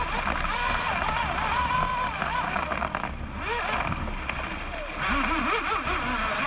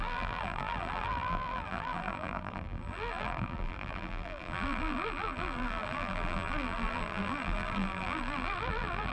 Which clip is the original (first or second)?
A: first